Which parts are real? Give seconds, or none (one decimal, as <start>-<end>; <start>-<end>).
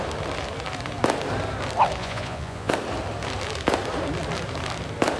0.0-2.0; 2.7-5.2